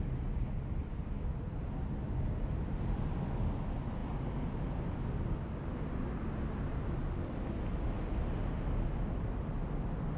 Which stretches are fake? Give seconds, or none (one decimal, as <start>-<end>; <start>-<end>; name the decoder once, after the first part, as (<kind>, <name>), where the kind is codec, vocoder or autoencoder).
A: none